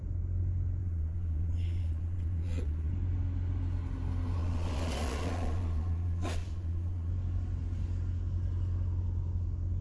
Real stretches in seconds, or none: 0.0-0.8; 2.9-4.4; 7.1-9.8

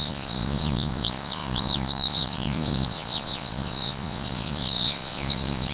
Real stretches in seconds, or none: none